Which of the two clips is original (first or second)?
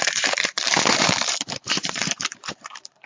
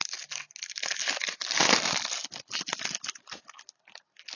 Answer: second